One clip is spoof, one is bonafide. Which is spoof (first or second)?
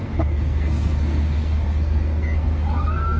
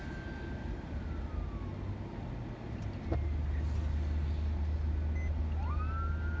first